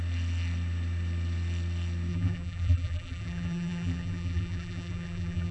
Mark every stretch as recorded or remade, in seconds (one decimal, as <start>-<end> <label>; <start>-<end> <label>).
0.0-2.1 recorded; 2.1-5.5 remade